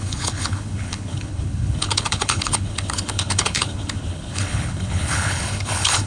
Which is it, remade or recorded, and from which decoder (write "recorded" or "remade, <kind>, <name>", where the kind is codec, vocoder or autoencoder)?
remade, codec, HILCodec